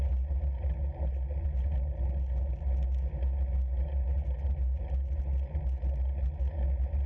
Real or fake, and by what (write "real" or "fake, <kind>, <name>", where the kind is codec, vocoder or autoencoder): real